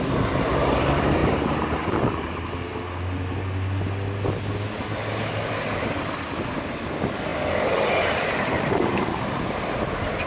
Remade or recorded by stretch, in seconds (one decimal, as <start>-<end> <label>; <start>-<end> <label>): 0.0-1.2 remade; 1.2-2.2 recorded; 2.2-2.7 remade; 2.7-6.6 recorded; 6.6-10.3 remade